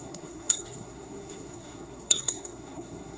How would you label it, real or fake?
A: fake